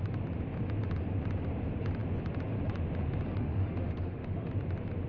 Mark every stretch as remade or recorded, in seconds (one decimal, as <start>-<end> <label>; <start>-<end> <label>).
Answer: 0.0-3.4 recorded; 3.4-4.5 remade; 4.5-5.1 recorded